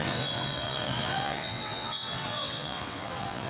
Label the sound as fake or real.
fake